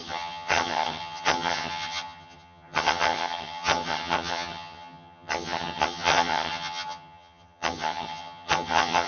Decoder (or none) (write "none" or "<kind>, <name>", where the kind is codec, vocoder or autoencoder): vocoder, HiFi-GAN